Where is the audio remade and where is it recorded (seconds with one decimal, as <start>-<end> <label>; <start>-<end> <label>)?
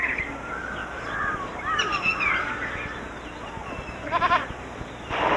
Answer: 0.0-0.8 recorded; 0.8-2.3 remade; 2.3-3.6 recorded; 3.6-4.9 remade; 4.9-5.4 recorded